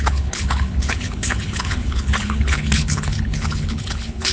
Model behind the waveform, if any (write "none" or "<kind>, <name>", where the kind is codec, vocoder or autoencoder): codec, HILCodec